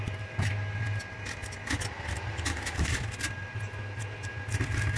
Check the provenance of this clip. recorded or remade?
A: recorded